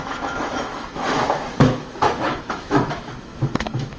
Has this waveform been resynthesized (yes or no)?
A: yes